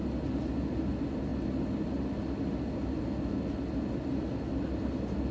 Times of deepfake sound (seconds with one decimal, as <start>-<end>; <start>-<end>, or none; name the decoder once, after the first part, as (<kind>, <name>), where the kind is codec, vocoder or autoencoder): none